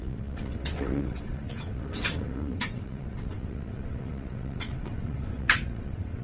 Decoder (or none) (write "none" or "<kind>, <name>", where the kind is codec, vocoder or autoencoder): vocoder, WaveNeXt